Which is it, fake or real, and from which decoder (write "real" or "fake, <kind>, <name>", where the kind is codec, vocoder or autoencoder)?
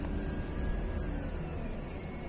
real